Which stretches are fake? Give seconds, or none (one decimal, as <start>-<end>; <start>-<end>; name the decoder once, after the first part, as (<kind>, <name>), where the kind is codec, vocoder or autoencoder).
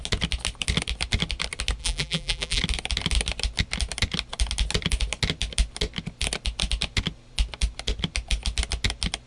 1.8-2.6 (vocoder, BigVGAN v2)